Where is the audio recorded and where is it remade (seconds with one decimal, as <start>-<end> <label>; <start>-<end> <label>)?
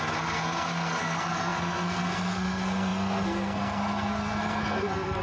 0.0-5.2 remade